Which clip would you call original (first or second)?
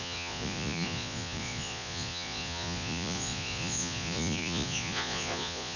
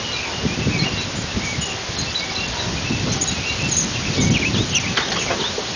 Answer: second